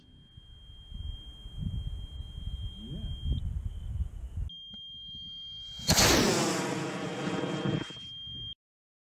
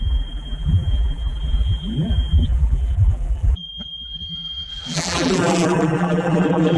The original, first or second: first